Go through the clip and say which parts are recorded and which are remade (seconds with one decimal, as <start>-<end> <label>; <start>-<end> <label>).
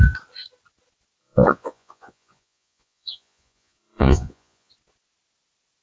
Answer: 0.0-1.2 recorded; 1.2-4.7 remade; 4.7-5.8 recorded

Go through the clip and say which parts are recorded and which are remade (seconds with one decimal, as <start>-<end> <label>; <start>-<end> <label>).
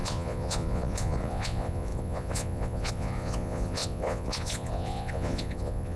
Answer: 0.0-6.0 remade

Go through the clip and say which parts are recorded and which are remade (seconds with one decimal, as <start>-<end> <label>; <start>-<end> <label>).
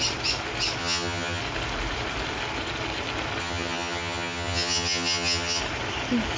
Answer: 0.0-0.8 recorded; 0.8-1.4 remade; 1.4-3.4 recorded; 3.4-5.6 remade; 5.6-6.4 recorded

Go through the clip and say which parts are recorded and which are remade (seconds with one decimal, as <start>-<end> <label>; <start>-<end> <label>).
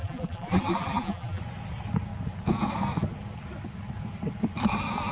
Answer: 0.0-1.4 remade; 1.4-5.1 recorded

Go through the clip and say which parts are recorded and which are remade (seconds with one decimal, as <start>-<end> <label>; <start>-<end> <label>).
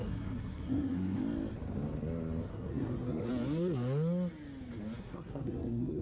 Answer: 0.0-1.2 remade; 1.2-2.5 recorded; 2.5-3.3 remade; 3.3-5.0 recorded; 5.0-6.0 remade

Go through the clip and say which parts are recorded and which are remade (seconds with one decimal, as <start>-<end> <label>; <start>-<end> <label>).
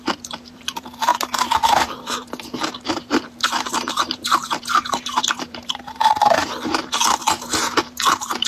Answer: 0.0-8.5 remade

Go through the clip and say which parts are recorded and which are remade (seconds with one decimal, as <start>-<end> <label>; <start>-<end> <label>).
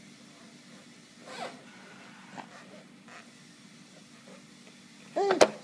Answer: 0.0-5.6 recorded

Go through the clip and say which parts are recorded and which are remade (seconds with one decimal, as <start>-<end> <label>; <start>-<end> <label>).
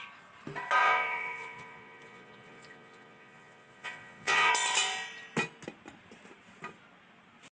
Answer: 0.0-0.8 recorded; 0.8-4.5 remade; 4.5-7.5 recorded